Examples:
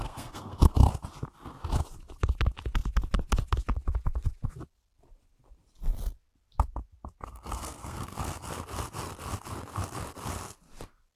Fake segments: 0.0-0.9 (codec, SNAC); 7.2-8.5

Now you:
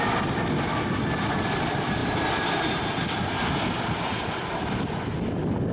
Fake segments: none